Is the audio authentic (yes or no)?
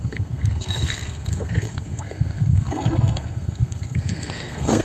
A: no